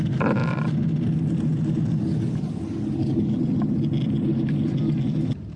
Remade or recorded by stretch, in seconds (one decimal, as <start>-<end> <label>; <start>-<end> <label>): 0.0-5.6 recorded

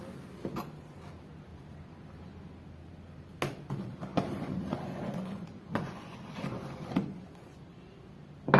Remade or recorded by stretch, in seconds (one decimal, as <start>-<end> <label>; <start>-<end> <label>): 0.0-4.1 recorded; 4.1-7.6 remade; 7.6-8.6 recorded